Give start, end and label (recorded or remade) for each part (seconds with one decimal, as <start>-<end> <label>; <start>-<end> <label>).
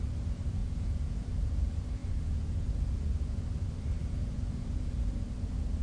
0.0-0.6 recorded; 0.6-1.6 remade; 1.6-2.0 recorded; 2.0-3.4 remade; 3.4-4.0 recorded; 4.0-5.0 remade; 5.0-5.8 recorded